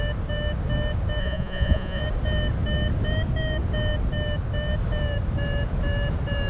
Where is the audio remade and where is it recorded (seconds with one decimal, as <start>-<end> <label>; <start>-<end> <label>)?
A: 0.0-1.2 recorded; 1.2-2.0 remade; 2.0-6.5 recorded